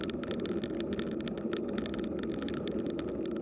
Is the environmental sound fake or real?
real